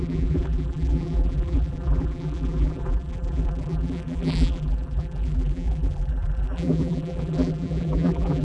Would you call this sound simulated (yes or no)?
yes